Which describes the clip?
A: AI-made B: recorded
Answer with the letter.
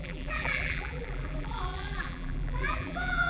A